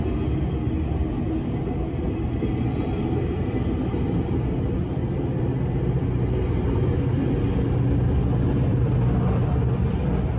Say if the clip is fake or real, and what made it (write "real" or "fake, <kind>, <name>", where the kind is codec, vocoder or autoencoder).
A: real